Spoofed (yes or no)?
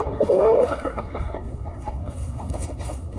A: yes